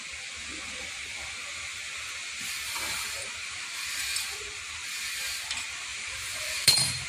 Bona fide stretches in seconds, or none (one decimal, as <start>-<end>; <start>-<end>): 0.0-3.4; 4.0-5.9